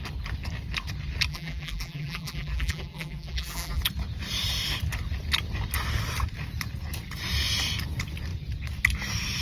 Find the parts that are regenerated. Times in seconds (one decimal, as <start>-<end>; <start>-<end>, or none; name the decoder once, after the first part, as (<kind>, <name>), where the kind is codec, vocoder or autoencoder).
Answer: 1.3-3.8 (vocoder, BigVGAN v2)